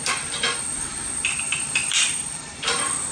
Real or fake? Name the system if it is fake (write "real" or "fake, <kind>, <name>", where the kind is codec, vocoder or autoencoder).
fake, vocoder, BigVGAN v2